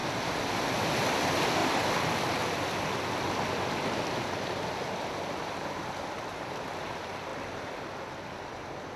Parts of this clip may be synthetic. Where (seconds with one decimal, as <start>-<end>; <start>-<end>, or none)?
none